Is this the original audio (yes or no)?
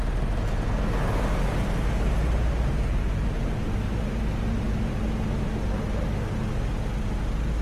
yes